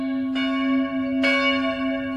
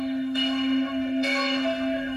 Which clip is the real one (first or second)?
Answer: first